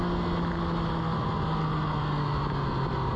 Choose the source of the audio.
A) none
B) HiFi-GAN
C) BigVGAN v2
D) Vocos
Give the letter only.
A